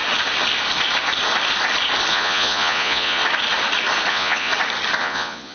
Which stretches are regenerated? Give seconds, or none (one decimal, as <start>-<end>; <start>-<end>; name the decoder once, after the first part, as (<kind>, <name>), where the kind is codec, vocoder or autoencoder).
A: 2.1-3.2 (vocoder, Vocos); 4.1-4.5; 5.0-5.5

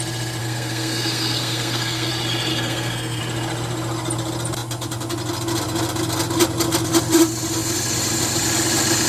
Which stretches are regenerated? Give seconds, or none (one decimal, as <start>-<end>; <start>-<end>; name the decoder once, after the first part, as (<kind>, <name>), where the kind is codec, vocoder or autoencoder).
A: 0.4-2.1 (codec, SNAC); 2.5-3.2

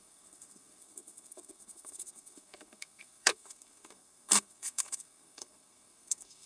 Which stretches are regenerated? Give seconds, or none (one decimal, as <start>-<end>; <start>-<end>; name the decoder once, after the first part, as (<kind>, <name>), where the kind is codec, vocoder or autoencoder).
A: 0.0-6.5 (codec, SNAC)

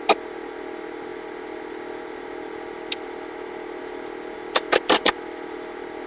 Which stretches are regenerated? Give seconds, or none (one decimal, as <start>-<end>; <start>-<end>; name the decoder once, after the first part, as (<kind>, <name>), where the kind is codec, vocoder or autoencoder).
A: none